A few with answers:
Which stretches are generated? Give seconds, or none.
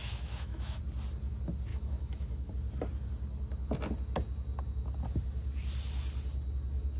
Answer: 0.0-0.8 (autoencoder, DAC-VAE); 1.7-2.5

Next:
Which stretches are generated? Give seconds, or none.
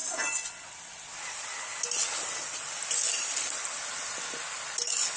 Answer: none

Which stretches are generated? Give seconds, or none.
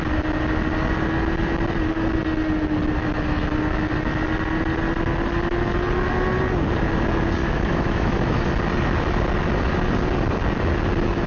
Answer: 7.4-8.4 (autoencoder, DAC-VAE)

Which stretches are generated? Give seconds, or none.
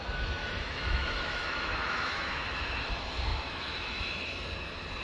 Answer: 0.4-2.6 (autoencoder, DAC-VAE); 3.3-4.0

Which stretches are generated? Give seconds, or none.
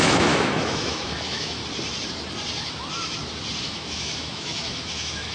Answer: 0.0-1.6 (autoencoder, DAC-VAE); 3.6-5.3